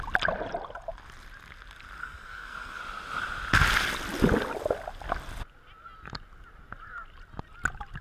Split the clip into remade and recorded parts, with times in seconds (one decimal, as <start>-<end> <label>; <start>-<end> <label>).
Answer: 0.0-2.0 recorded; 2.0-2.8 remade; 2.8-8.0 recorded